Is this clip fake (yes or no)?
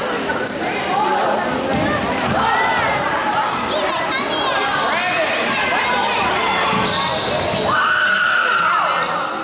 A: no